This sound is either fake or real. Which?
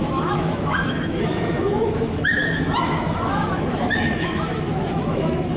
fake